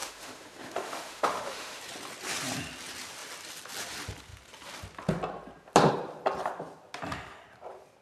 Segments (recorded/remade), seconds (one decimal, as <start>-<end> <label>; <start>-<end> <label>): 0.0-1.8 remade; 1.8-8.0 recorded